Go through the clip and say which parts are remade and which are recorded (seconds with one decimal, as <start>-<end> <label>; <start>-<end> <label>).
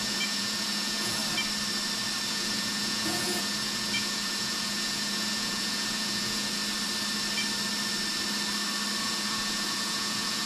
0.0-1.2 remade; 1.2-2.3 recorded; 2.3-6.6 remade; 6.6-9.0 recorded; 9.0-10.5 remade